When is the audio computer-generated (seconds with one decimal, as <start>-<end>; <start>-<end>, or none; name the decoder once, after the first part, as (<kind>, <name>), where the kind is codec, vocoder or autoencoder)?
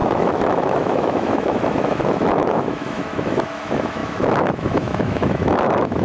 0.0-6.0 (autoencoder, DAC-VAE)